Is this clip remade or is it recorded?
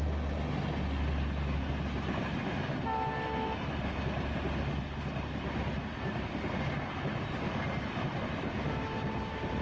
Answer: recorded